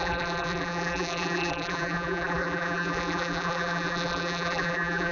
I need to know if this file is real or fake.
fake